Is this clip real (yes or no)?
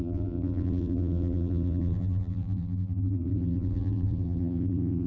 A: no